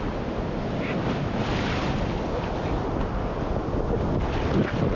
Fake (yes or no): no